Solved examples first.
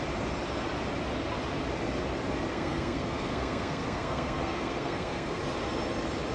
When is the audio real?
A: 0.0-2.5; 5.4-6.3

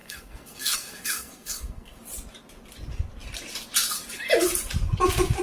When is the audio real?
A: 2.0-5.4

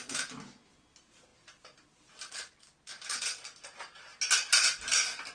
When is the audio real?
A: 0.0-5.3

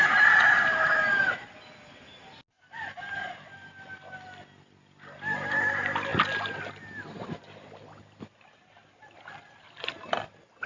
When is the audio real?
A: 0.0-10.7